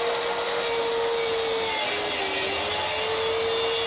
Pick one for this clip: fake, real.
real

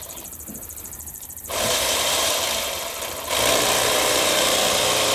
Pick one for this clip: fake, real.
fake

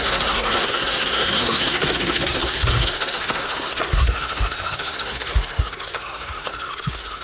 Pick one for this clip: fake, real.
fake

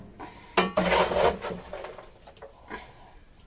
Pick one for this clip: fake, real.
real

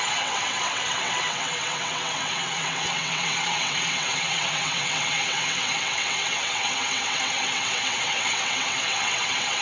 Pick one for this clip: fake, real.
fake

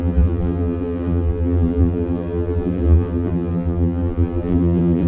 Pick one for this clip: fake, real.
fake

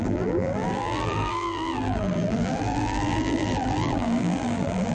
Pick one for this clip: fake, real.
fake